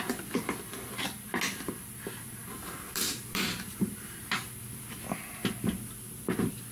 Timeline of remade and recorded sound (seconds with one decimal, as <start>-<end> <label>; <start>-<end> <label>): 0.0-2.6 recorded; 2.6-4.1 remade; 4.1-6.7 recorded